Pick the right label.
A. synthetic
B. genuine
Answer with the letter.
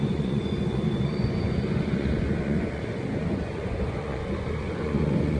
A